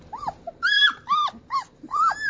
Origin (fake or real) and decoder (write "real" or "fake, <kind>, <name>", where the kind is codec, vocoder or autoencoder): real